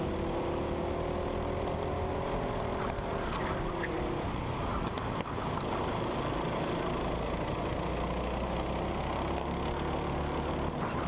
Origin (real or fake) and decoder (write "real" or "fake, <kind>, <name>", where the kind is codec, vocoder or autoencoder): real